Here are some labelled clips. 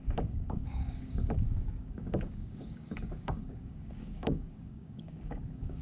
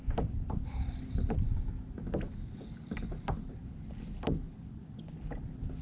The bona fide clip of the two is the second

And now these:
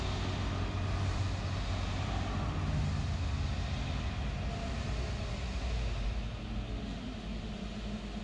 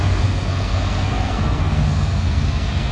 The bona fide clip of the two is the first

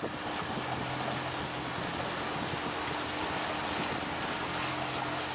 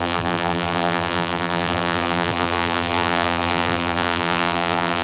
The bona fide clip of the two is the first